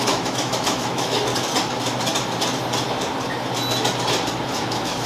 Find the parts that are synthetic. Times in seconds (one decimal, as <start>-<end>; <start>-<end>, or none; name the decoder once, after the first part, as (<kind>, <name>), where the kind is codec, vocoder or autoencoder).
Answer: 0.0-1.3 (autoencoder, DAC-VAE); 4.4-5.1